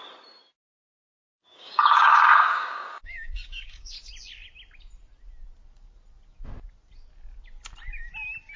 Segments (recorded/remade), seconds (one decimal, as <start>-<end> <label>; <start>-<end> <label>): 0.0-1.0 recorded; 1.0-4.1 remade; 4.1-8.6 recorded